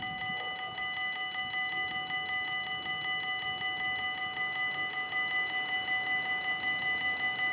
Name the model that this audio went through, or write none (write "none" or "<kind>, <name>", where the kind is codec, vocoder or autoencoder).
none